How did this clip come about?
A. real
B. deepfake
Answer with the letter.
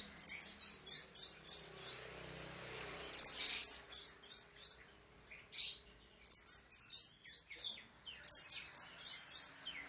B